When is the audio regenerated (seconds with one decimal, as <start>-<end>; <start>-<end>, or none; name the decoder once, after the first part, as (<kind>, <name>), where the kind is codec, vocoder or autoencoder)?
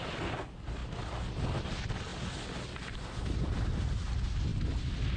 none